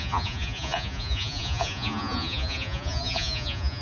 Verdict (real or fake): fake